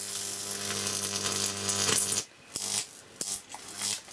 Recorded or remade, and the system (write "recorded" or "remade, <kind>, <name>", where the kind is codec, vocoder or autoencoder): recorded